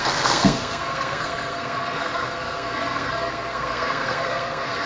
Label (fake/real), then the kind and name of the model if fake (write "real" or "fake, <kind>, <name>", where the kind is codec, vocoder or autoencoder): fake, codec, SNAC